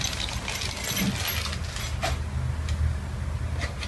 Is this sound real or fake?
real